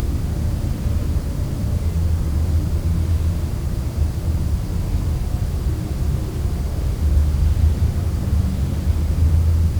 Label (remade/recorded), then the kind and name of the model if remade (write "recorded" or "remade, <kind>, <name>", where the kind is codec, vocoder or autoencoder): recorded